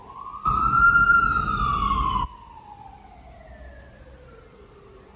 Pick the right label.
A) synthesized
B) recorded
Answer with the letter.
B